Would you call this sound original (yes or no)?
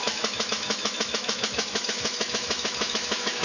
no